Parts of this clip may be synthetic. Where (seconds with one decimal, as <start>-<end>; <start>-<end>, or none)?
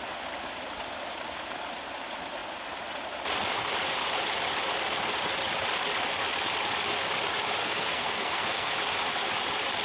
7.6-8.7